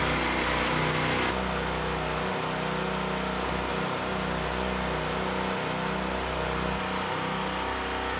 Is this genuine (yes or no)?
yes